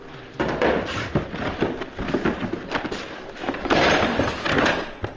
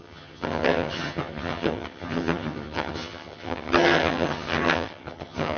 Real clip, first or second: first